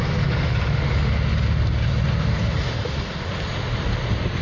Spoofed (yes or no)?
no